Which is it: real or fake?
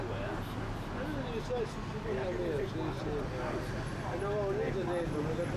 real